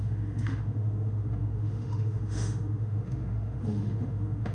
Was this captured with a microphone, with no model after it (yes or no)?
no